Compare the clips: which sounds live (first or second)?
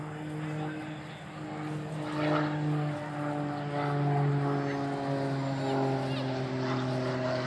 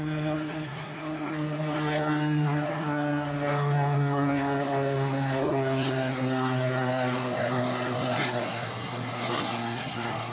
first